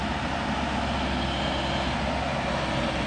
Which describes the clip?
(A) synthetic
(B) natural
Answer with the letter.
B